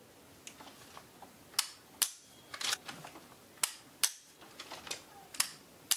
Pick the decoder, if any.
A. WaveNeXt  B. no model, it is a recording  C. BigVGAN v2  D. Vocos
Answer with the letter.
B